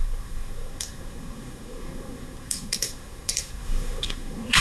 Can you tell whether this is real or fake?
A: fake